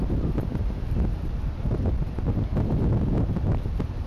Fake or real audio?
real